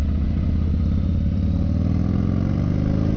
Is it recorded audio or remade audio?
recorded